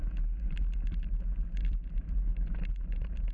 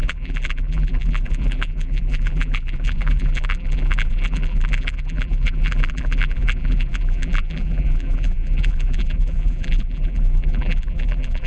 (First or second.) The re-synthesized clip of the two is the second